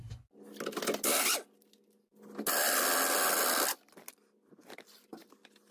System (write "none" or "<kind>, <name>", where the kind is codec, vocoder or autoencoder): none